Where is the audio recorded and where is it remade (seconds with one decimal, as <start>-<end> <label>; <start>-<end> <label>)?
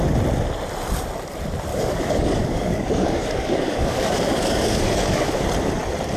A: 0.0-1.7 recorded; 1.7-5.4 remade; 5.4-6.2 recorded